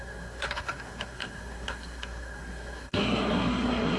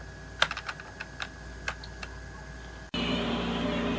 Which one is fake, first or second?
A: first